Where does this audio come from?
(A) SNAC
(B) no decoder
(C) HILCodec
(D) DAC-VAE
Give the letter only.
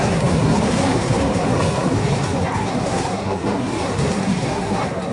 A